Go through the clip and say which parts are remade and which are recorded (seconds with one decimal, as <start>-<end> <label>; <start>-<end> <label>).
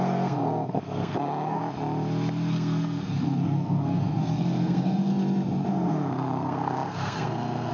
0.0-1.6 remade; 1.6-2.5 recorded; 2.5-5.1 remade; 5.1-5.7 recorded; 5.7-7.7 remade